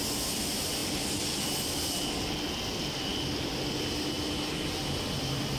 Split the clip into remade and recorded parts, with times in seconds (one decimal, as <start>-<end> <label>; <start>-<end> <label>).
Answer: 0.0-5.6 recorded